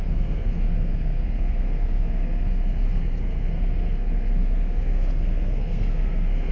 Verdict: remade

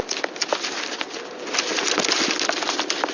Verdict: recorded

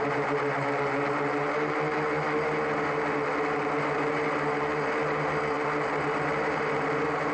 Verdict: recorded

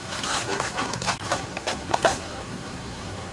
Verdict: remade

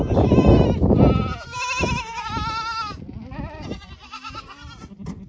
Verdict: recorded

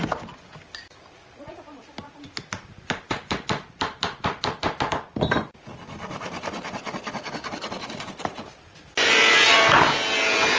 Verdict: recorded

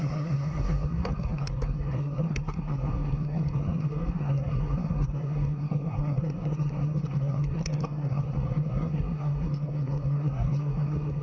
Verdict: remade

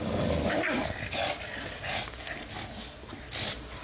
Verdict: recorded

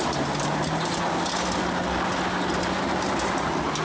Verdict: recorded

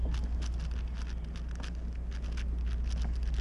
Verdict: recorded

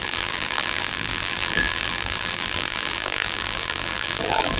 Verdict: remade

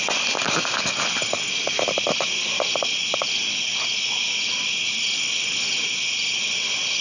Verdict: recorded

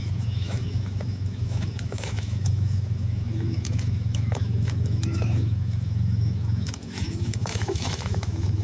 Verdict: remade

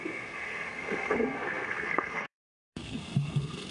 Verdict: remade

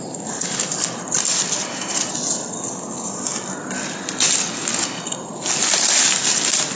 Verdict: recorded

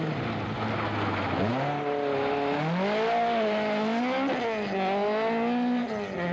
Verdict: recorded